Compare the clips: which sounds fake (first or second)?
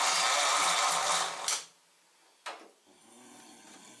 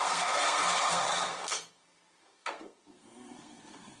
second